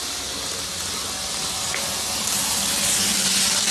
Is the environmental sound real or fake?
real